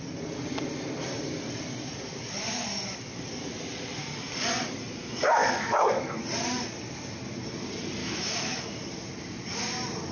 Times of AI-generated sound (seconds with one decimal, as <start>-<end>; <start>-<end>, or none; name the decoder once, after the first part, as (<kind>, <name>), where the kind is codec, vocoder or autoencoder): 5.4-6.2 (autoencoder, DAC-VAE); 8.0-8.6